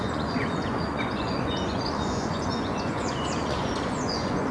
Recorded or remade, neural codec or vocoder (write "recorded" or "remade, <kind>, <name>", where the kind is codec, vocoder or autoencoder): remade, vocoder, Vocos